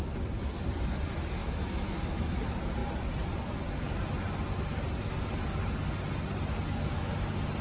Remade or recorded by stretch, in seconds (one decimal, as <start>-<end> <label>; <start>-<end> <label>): 0.0-1.4 recorded; 1.4-2.4 remade; 2.4-7.6 recorded